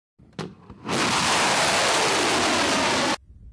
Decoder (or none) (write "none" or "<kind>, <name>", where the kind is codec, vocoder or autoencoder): none